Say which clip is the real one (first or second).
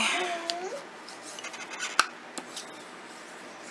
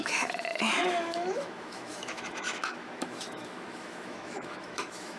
first